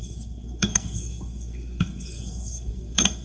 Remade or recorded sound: remade